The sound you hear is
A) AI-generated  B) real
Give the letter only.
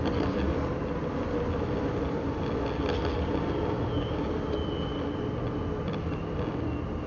B